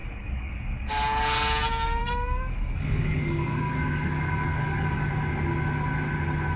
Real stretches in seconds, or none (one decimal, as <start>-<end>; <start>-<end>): 0.9-2.0; 5.1-6.6